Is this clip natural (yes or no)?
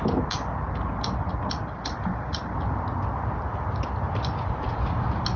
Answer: yes